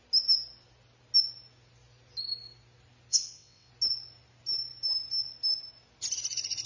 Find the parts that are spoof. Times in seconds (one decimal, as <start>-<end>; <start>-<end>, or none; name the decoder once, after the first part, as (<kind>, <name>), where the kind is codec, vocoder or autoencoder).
3.1-3.7 (vocoder, WaveNeXt)